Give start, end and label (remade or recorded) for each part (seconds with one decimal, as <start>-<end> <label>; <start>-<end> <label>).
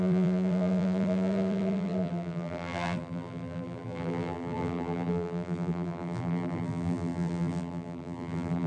0.0-8.7 remade